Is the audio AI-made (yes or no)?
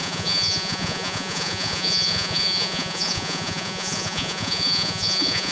yes